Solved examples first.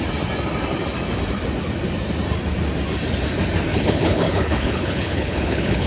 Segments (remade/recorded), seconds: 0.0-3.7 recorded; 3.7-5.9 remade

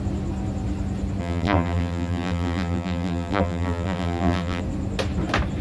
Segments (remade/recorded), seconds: 0.0-1.2 recorded; 1.2-4.6 remade; 4.6-5.6 recorded

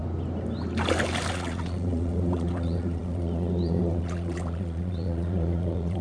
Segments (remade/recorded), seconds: 0.0-1.3 recorded; 1.3-6.0 remade